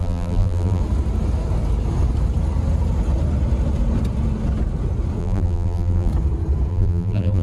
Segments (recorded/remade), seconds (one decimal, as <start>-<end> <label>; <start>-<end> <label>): 0.0-0.8 remade; 0.8-5.2 recorded; 5.2-6.1 remade; 6.1-6.7 recorded; 6.7-7.4 remade